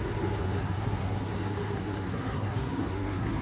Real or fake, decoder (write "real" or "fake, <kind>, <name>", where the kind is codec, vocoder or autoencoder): fake, codec, SNAC